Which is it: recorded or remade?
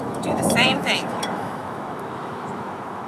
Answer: remade